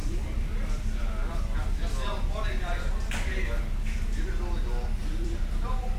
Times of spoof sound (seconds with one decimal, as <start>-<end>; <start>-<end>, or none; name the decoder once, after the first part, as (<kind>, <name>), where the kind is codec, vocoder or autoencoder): 0.0-3.6 (vocoder, BigVGAN v2); 5.0-6.0